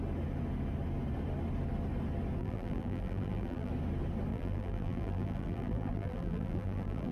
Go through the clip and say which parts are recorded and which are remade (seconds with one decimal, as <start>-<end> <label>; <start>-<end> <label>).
0.0-2.4 recorded; 2.4-3.7 remade; 3.7-4.3 recorded; 4.3-7.1 remade